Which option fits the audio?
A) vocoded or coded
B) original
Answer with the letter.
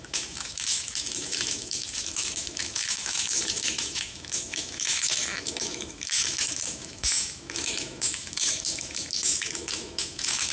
A